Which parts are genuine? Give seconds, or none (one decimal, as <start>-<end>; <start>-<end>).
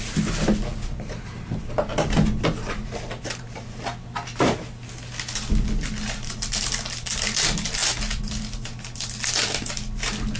0.0-10.4